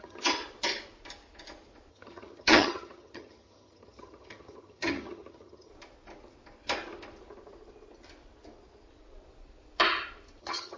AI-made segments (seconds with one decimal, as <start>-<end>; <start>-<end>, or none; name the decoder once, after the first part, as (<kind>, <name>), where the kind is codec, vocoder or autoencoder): 0.0-0.4 (vocoder, HiFi-GAN); 1.9-5.7; 10.4-10.8